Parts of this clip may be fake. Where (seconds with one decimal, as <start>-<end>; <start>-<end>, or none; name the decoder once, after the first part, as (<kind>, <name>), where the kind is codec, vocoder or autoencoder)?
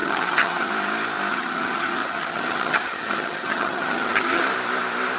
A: 0.0-0.7 (vocoder, HiFi-GAN); 1.3-4.4